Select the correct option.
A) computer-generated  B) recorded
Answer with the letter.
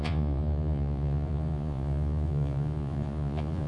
A